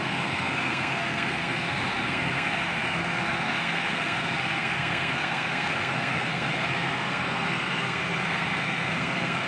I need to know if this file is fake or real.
fake